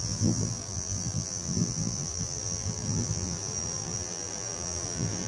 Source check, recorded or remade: remade